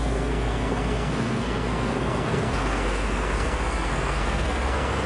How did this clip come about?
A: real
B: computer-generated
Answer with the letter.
B